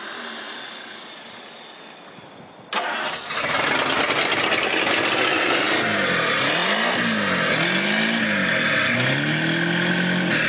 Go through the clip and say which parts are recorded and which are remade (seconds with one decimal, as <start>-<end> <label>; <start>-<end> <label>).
0.0-10.5 recorded